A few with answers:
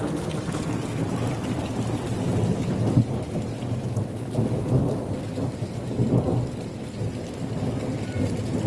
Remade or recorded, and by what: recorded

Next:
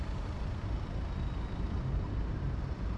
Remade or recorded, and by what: recorded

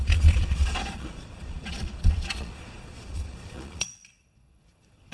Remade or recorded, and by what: remade, vocoder, Vocos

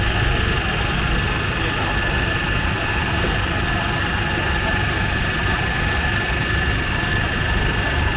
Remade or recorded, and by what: recorded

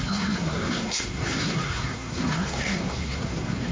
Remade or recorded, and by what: remade, codec, SNAC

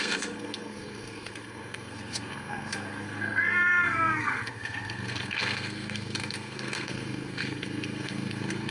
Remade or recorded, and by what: remade, codec, SNAC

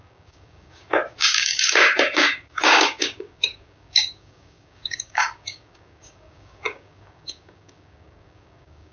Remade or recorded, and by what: remade, codec, DAC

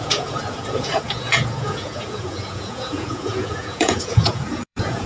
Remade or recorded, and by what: remade, vocoder, Vocos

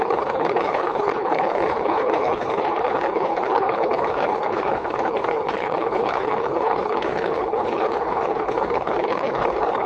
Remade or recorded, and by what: remade, codec, HILCodec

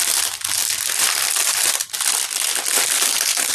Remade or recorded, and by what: recorded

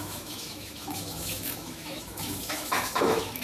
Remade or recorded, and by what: remade, autoencoder, DAC-VAE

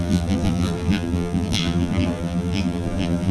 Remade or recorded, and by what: remade, vocoder, BigVGAN v2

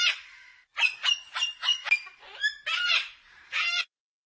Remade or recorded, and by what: recorded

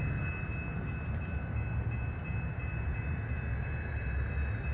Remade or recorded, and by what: recorded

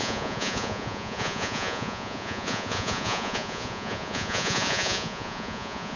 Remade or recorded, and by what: remade, vocoder, Vocos